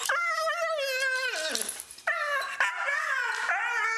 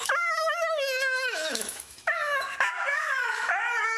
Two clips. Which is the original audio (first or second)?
first